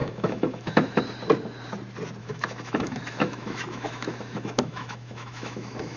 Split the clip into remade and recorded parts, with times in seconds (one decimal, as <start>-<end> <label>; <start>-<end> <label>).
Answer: 0.0-1.0 remade; 1.0-2.2 recorded; 2.2-6.0 remade